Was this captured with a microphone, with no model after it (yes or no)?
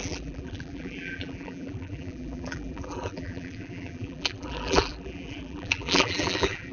no